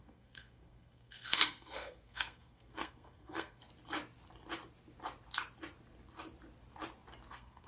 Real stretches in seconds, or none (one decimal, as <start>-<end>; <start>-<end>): 3.6-7.3